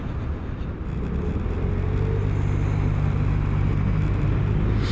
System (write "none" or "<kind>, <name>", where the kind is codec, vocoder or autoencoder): none